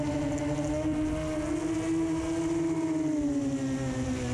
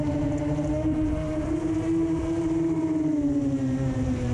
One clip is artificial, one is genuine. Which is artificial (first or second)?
second